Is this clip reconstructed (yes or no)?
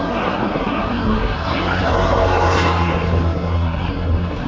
yes